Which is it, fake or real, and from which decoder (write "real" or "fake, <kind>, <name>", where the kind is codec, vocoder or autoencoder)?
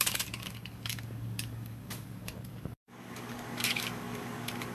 fake, codec, DAC